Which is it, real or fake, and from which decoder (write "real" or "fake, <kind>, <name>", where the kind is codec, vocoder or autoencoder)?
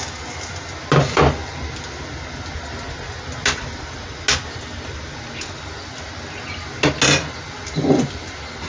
real